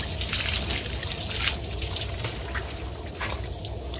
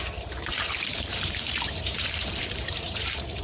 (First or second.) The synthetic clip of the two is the second